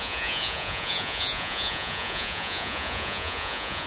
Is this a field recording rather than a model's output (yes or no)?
no